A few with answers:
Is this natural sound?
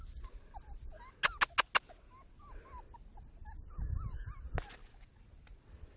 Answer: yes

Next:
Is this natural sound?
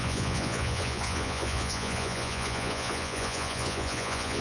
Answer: no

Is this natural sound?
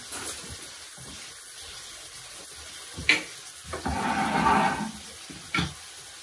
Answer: yes